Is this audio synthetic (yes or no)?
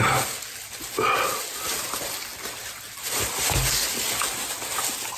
no